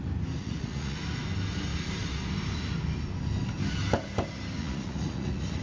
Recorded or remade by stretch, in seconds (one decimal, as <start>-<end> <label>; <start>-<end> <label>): 0.0-0.4 recorded; 0.4-1.0 remade; 1.0-4.6 recorded; 4.6-5.6 remade